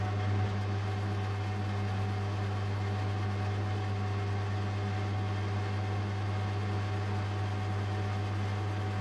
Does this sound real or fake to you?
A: real